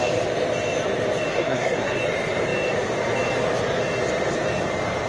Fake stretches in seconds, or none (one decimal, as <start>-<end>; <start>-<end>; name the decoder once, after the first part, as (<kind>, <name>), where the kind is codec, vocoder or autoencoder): 1.3-2.0 (codec, SNAC)